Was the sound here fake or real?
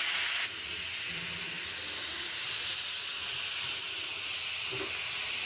real